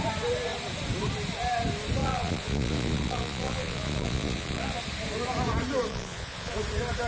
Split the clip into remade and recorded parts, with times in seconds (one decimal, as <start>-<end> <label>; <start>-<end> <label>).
0.0-2.0 recorded; 2.0-4.8 remade; 4.8-5.9 recorded; 5.9-6.5 remade; 6.5-7.1 recorded